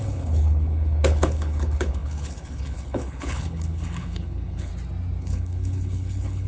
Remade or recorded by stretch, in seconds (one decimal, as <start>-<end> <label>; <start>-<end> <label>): 0.0-4.7 remade; 4.7-5.2 recorded; 5.2-6.5 remade